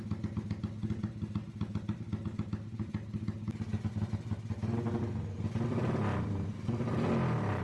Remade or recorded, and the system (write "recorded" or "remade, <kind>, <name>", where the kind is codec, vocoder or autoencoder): recorded